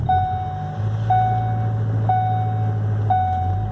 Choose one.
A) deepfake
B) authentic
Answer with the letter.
B